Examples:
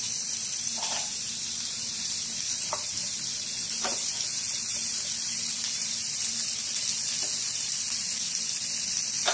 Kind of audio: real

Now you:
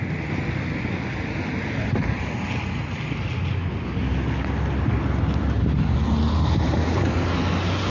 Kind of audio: real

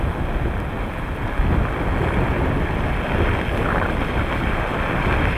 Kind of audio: real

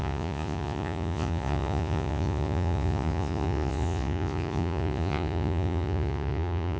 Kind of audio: fake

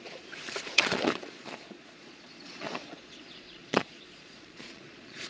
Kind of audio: fake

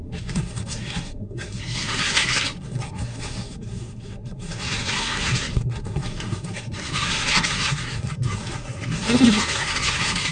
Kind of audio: fake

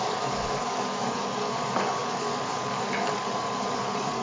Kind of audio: fake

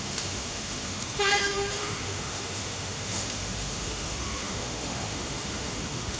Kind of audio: fake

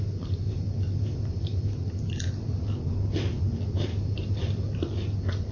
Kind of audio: real